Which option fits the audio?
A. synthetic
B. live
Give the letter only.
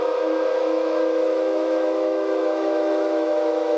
A